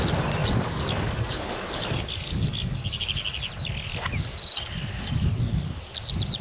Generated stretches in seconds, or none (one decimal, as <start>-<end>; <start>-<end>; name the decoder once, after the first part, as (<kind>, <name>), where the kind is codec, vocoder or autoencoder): 0.4-3.5 (codec, DAC)